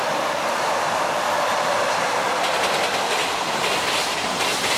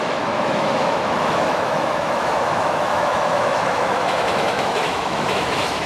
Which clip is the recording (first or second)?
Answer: first